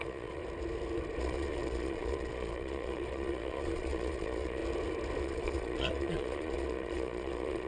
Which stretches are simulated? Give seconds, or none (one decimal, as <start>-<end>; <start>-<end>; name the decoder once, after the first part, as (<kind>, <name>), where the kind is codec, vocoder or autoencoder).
0.0-0.4 (vocoder, Vocos); 1.2-4.6; 5.2-7.7